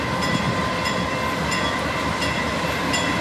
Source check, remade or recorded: recorded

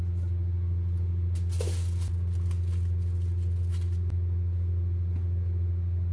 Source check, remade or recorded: recorded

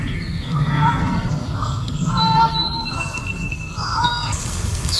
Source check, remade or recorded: remade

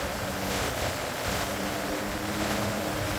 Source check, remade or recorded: recorded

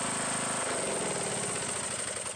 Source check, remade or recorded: recorded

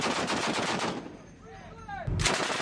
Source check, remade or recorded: recorded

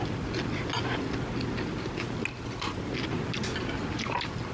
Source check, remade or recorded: recorded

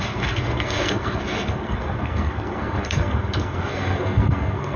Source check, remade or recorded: remade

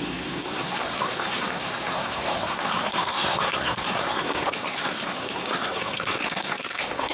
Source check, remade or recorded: remade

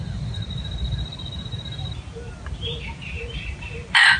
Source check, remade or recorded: recorded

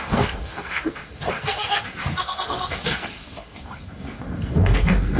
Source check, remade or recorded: remade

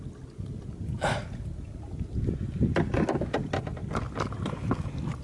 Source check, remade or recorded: recorded